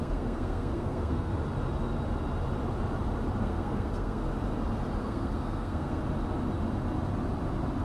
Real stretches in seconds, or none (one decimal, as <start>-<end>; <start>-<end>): 1.3-3.4; 4.3-5.0; 6.0-7.8